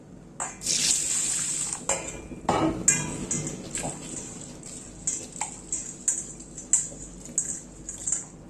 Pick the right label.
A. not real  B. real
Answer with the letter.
B